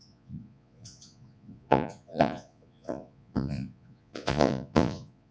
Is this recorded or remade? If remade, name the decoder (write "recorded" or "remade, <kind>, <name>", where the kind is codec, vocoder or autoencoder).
remade, vocoder, Vocos